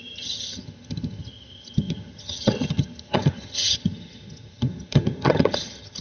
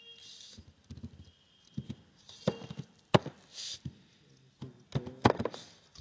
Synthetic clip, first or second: first